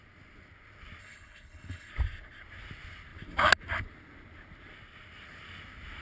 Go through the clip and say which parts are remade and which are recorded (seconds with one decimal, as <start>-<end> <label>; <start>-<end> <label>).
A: 0.0-1.0 recorded; 1.0-1.9 remade; 1.9-6.0 recorded